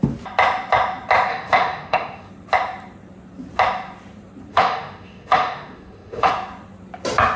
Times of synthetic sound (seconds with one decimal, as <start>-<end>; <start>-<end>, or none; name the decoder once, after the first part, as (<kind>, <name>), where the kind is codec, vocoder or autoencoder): 1.3-2.3 (autoencoder, DAC-VAE); 4.5-6.3